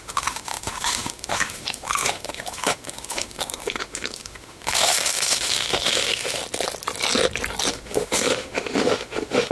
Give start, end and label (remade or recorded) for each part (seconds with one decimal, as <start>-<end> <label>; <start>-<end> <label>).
0.0-6.4 remade; 6.4-7.7 recorded; 7.7-9.5 remade